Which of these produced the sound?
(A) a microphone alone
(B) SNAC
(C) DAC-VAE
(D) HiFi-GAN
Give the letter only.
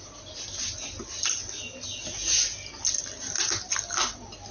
A